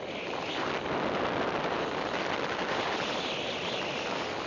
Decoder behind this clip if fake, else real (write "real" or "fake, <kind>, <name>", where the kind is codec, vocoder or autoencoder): real